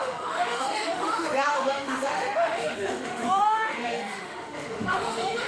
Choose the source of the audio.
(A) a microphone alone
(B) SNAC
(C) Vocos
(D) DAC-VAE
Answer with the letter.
D